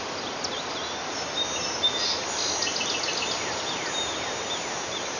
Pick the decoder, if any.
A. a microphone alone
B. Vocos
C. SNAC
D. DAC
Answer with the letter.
A